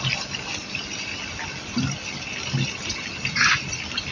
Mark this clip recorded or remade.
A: recorded